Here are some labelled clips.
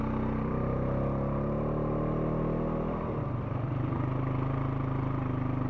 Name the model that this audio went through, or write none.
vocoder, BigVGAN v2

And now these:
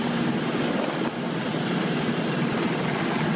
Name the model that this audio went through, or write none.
none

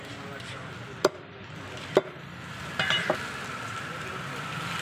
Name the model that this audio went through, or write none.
none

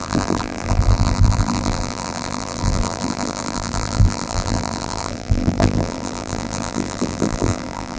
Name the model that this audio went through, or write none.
vocoder, BigVGAN v2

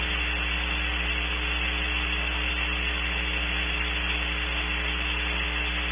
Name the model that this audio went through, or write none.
none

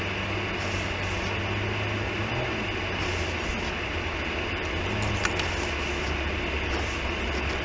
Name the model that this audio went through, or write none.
none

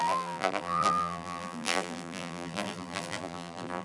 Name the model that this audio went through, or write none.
vocoder, BigVGAN v2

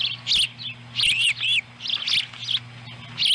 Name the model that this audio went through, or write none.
none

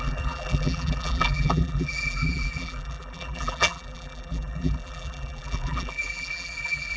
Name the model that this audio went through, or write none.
vocoder, BigVGAN v2